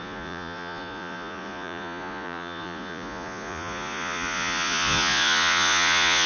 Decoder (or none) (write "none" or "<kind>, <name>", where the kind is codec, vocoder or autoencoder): vocoder, Vocos